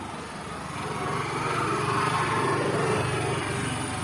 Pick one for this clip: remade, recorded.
recorded